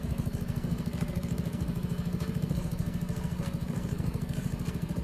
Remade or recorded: remade